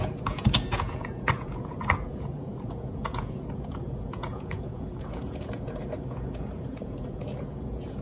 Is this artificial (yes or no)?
yes